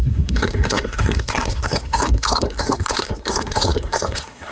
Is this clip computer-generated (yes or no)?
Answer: yes